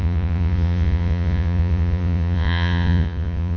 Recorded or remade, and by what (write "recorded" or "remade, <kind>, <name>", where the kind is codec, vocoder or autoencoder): remade, vocoder, Vocos